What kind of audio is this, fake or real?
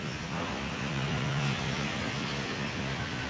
fake